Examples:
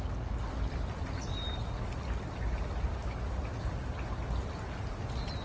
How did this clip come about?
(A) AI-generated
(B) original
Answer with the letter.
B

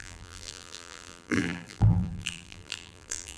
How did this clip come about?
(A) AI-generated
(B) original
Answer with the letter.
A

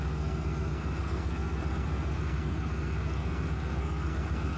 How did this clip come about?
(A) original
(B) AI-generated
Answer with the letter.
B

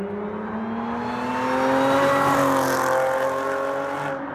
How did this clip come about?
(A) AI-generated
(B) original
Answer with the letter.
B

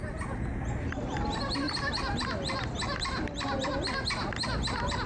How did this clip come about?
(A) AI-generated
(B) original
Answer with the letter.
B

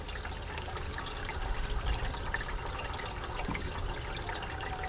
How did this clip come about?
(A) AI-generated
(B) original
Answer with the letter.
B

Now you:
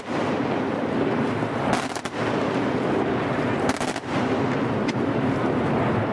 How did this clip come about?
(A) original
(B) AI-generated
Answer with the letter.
A